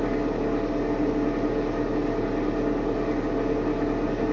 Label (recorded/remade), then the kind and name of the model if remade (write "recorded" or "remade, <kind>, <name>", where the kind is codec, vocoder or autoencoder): recorded